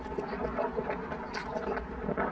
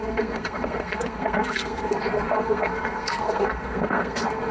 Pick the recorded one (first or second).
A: first